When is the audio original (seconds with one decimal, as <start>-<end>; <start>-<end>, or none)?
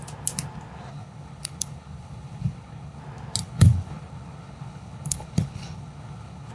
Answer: 0.0-0.9; 3.0-3.4